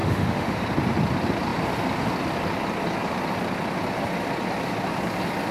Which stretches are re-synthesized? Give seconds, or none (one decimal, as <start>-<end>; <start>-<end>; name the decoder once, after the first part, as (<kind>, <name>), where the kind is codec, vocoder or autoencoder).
0.0-0.6 (autoencoder, DAC-VAE)